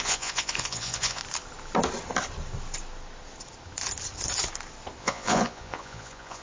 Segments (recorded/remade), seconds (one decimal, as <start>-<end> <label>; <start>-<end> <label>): 0.0-1.2 remade; 1.2-5.0 recorded; 5.0-6.4 remade